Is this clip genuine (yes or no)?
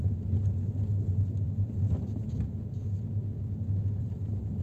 yes